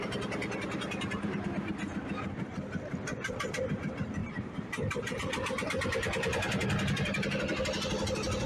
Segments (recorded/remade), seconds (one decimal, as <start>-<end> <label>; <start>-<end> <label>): 0.0-4.2 recorded; 4.2-5.2 remade; 5.2-8.5 recorded